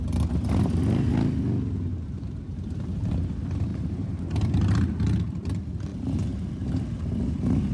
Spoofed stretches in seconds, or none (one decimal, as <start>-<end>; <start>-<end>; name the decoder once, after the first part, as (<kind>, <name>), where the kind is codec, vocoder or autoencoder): 1.9-3.1 (vocoder, BigVGAN v2); 3.7-4.5; 5.9-7.1